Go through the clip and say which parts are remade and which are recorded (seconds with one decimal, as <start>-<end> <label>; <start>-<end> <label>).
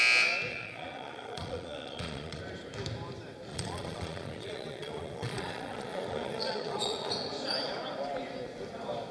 0.0-0.5 recorded; 0.5-2.4 remade; 2.4-3.5 recorded; 3.5-7.1 remade; 7.1-9.1 recorded